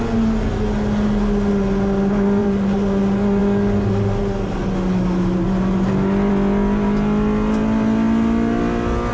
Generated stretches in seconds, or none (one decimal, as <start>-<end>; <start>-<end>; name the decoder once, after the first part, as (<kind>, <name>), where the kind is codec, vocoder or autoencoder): 2.4-3.0 (vocoder, BigVGAN v2)